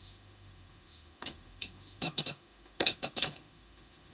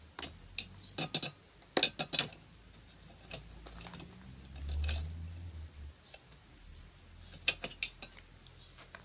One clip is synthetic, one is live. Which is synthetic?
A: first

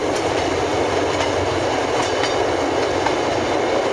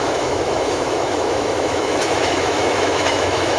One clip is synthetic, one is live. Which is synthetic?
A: second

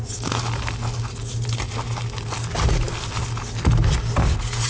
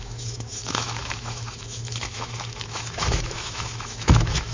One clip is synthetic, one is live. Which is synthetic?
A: second